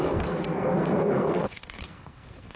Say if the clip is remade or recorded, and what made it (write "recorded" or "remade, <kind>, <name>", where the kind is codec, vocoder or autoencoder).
remade, codec, SNAC